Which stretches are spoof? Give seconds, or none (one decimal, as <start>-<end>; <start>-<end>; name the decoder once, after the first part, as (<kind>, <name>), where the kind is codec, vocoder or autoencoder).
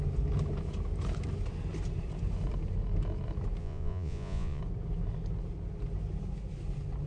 3.6-4.6 (vocoder, Vocos)